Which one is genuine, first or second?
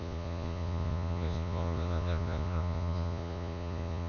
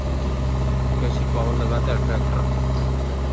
second